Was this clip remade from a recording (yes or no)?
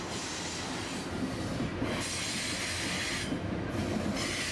no